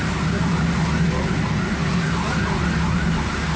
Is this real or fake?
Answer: real